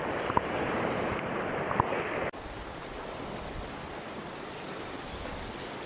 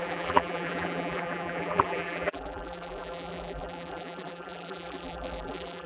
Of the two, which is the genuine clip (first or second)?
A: first